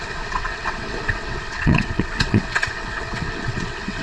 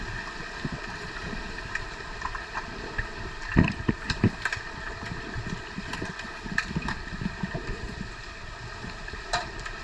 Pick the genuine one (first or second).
second